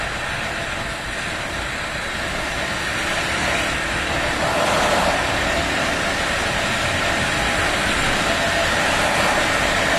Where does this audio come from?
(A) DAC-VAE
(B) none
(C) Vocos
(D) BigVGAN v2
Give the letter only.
B